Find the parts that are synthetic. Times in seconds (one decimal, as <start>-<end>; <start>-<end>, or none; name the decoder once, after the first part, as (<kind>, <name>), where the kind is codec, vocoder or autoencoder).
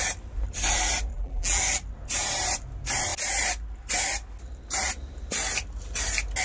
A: 1.1-1.6 (vocoder, BigVGAN v2)